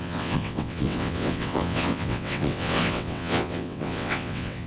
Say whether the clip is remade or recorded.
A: remade